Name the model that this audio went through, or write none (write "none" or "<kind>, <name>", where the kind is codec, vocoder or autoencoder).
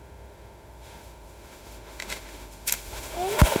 autoencoder, DAC-VAE